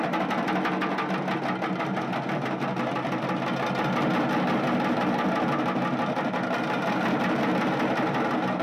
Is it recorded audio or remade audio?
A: recorded